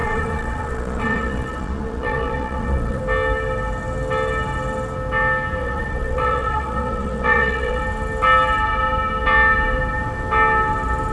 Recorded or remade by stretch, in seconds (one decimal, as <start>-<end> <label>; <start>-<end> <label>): 0.0-3.0 remade; 3.0-5.6 recorded; 5.6-7.8 remade; 7.8-11.1 recorded